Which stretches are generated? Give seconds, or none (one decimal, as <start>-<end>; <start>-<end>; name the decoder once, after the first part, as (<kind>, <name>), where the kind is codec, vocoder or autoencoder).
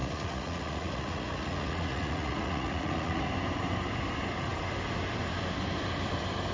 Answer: 0.0-3.3 (vocoder, Vocos)